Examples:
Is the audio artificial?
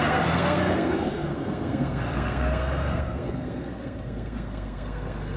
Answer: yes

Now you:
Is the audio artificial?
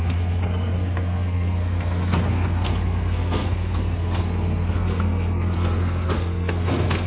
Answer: yes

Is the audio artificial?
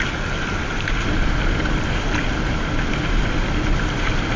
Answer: no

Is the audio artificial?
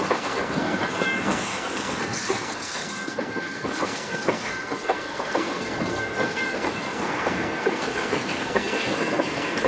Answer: yes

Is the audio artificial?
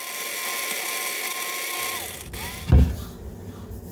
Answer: no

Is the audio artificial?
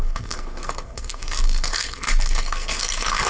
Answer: yes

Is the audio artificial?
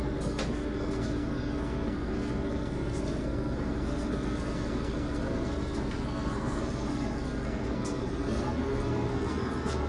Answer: yes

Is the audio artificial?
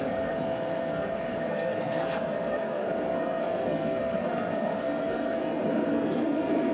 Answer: yes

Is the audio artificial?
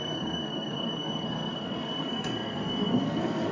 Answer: yes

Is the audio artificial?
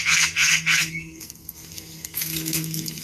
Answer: yes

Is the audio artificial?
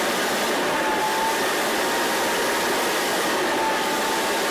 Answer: no